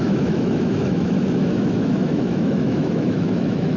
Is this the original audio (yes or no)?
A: no